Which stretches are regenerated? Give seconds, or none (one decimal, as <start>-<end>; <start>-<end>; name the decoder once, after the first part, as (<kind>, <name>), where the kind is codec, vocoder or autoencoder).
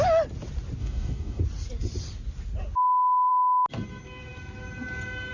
0.8-1.4 (codec, DAC)